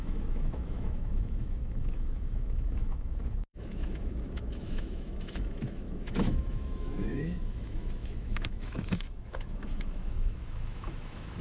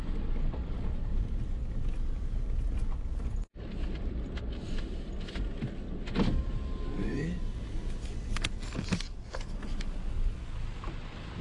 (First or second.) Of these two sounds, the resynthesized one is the first